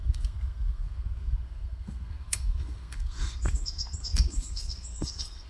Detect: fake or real fake